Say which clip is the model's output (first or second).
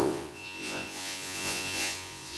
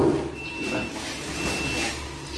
first